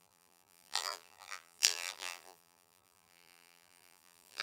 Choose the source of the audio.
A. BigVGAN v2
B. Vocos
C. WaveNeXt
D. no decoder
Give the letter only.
A